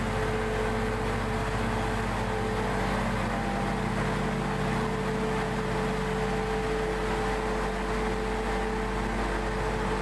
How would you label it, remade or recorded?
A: recorded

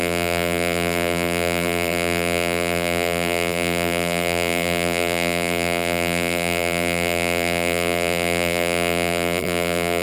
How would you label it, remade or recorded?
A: remade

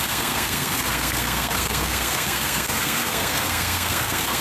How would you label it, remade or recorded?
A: remade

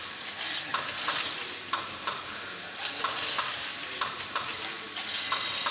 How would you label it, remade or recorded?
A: recorded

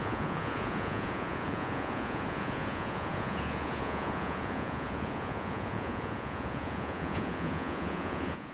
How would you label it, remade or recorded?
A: remade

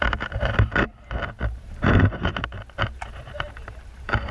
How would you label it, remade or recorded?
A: remade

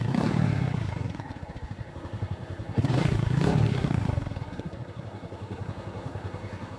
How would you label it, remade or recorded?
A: remade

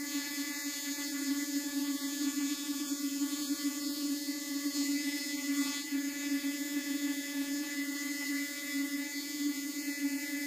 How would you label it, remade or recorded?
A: remade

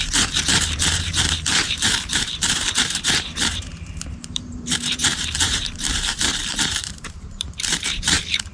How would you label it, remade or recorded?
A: remade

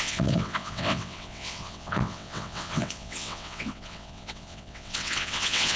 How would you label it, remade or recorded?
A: remade